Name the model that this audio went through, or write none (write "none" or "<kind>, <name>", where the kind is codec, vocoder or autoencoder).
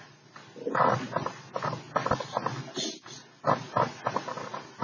none